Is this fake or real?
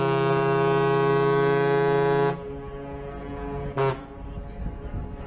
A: real